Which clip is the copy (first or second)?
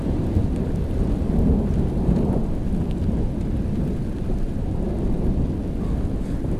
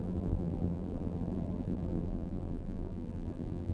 second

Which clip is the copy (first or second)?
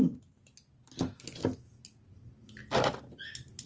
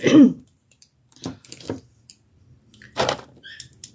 second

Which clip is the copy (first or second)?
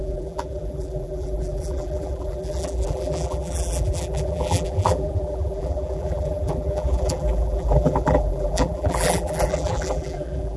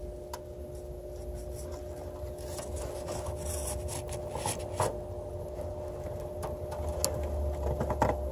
first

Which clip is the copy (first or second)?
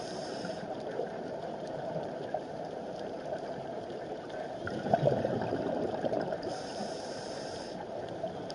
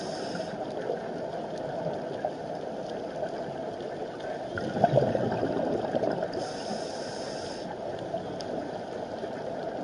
first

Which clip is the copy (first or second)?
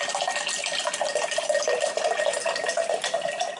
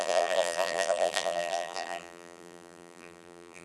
second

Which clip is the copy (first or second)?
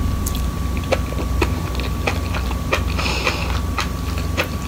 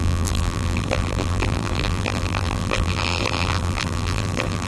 second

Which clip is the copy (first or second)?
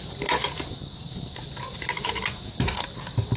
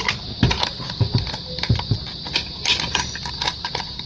second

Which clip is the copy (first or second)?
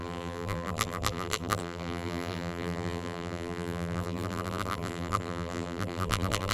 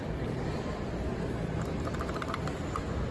first